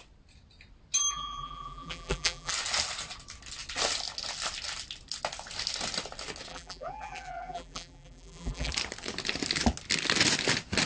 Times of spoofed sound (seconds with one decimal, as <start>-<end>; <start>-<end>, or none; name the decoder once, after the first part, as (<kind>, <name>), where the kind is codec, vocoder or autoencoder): 1.1-2.5 (vocoder, BigVGAN v2); 6.5-8.7